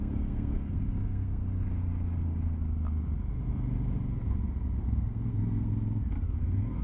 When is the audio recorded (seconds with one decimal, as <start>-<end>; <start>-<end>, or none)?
1.4-4.8; 5.7-6.3